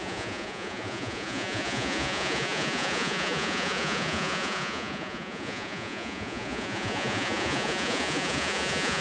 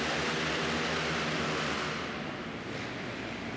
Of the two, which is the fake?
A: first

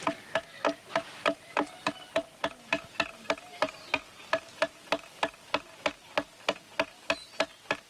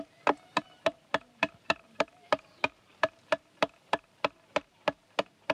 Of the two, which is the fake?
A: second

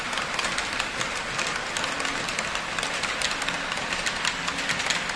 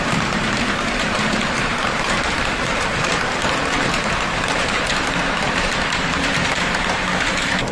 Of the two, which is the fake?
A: second